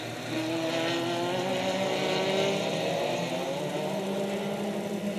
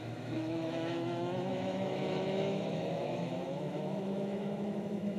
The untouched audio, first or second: first